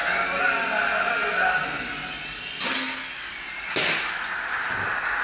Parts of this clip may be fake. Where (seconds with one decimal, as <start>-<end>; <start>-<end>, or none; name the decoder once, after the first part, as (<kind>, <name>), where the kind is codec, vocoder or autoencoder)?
none